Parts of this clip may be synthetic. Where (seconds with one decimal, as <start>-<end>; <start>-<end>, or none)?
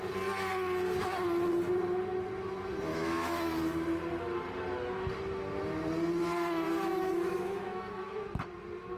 2.9-3.6; 6.9-8.2